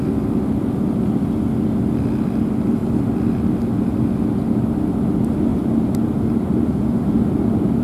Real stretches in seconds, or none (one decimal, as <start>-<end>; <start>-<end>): 0.0-5.5